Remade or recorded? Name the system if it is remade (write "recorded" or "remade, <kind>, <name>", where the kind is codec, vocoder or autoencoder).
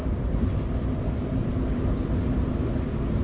recorded